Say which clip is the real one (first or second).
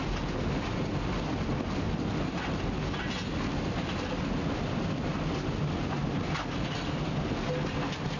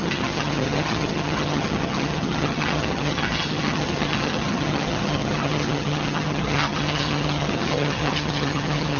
first